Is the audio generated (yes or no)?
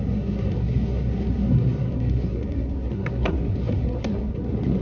yes